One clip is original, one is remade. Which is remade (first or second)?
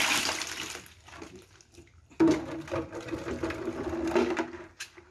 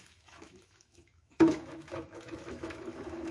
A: second